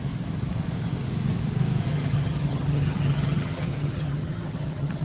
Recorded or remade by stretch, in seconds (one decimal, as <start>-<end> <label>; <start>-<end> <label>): 0.0-1.9 recorded; 1.9-5.0 remade